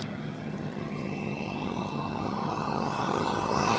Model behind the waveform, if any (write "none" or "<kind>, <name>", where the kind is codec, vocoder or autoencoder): vocoder, HiFi-GAN